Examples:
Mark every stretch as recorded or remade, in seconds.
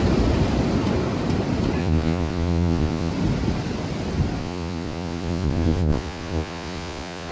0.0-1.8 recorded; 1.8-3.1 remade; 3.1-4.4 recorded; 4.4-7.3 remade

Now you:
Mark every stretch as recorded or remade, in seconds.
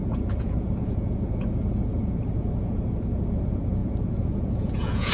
0.0-5.1 remade